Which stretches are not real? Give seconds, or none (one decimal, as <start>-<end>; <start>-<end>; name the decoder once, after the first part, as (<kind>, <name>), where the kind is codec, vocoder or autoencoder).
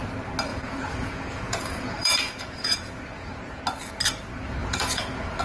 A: 0.5-3.6 (vocoder, Vocos); 4.6-5.4